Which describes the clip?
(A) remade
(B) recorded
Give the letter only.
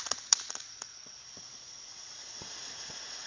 A